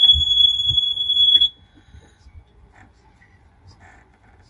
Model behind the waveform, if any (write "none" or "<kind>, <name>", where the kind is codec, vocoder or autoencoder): vocoder, Vocos